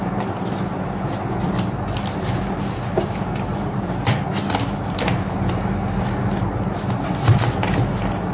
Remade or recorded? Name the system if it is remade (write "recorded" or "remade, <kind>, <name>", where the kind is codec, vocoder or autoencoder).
recorded